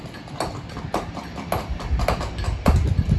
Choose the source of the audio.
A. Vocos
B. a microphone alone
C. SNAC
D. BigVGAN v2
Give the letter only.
B